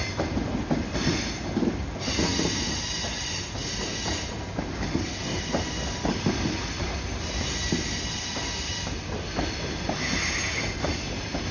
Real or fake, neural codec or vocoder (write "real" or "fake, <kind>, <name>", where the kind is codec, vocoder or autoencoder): real